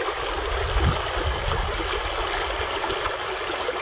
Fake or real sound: real